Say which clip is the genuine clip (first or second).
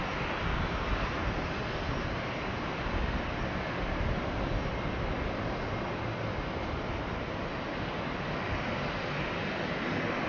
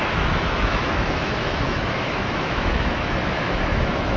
first